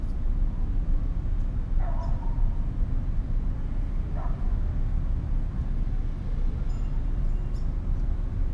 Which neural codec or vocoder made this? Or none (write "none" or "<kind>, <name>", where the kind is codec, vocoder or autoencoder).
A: none